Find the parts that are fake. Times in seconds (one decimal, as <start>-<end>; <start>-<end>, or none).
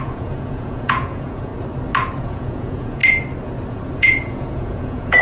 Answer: 0.0-1.5; 2.2-3.0; 3.7-5.2